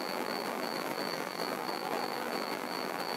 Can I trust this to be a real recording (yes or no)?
no